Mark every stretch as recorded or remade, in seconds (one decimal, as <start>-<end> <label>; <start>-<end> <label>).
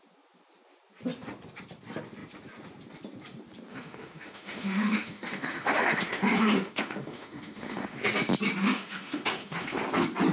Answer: 0.0-3.7 recorded; 3.7-8.0 remade; 8.0-8.6 recorded; 8.6-9.8 remade; 9.8-10.3 recorded